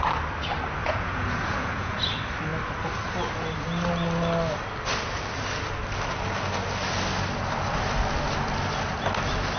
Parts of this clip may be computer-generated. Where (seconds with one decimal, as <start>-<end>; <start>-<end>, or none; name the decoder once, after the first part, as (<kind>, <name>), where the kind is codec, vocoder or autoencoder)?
0.8-2.0 (vocoder, Vocos)